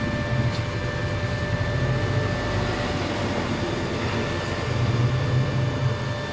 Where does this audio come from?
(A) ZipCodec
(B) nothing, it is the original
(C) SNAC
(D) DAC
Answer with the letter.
B